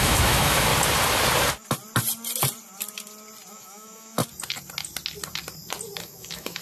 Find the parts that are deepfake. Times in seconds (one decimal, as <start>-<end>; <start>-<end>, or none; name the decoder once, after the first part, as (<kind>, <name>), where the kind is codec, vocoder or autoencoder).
0.0-0.7 (autoencoder, DAC-VAE); 3.5-4.2; 6.0-6.6